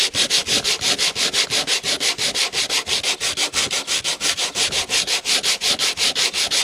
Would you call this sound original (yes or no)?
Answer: yes